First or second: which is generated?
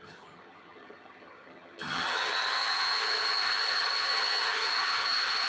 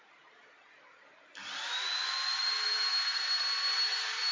first